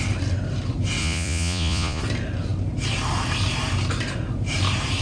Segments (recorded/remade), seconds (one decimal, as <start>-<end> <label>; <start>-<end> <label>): 0.0-1.0 recorded; 1.0-2.0 remade; 2.0-5.0 recorded